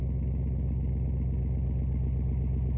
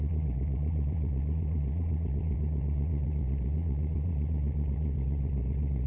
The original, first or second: first